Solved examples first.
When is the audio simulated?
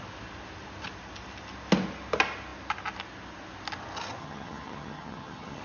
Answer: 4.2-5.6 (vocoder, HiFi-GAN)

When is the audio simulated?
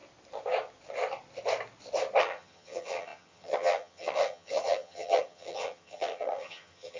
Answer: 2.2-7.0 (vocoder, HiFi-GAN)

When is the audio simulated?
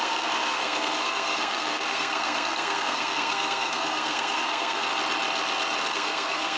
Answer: 0.0-4.9 (codec, SNAC); 5.9-6.6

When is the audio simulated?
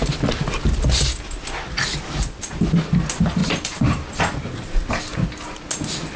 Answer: 3.4-4.2 (vocoder, BigVGAN v2)